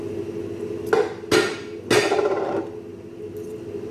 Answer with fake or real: real